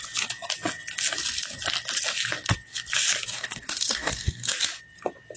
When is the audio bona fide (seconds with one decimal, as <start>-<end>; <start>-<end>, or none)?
0.0-3.3; 4.5-5.4